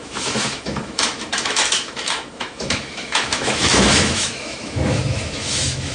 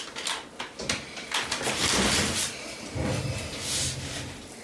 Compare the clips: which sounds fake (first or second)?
first